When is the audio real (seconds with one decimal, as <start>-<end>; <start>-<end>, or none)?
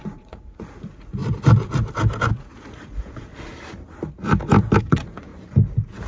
1.2-2.3; 3.3-4.8; 5.3-6.1